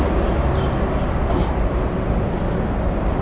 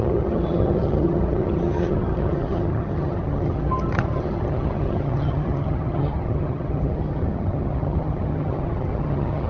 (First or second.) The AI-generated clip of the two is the second